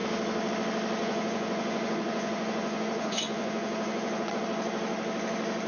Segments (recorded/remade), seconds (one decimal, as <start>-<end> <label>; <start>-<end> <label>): 0.0-1.0 recorded; 1.0-4.4 remade; 4.4-5.7 recorded

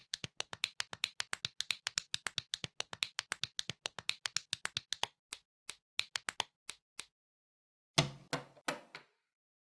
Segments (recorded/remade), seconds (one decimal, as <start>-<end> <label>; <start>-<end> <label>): 0.0-9.6 recorded

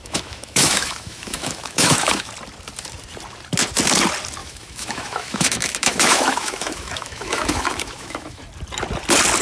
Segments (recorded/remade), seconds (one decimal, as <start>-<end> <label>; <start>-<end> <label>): 0.0-2.3 remade; 2.3-4.4 recorded; 4.4-8.4 remade; 8.4-9.4 recorded

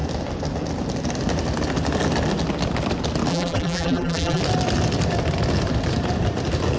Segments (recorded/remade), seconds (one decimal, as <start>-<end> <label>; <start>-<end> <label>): 0.0-3.3 recorded; 3.3-4.4 remade; 4.4-6.8 recorded

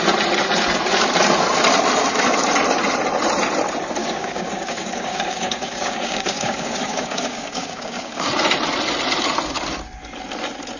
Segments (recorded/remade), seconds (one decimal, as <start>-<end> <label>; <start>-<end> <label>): 0.0-4.0 recorded; 4.0-8.3 remade; 8.3-10.8 recorded

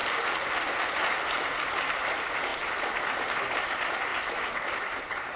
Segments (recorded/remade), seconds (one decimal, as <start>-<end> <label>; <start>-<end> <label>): 0.0-0.9 recorded; 0.9-2.5 remade; 2.5-3.1 recorded; 3.1-4.1 remade; 4.1-4.8 recorded; 4.8-5.4 remade